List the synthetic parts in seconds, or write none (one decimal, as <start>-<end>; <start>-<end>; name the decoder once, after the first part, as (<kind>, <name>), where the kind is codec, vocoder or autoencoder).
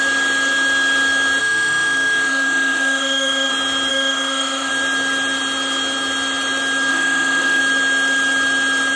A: 1.4-3.5 (autoencoder, DAC-VAE); 3.9-4.7; 6.9-7.6